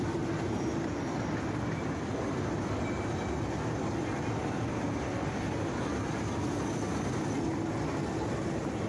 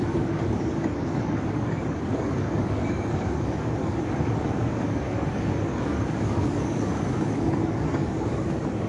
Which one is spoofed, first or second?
second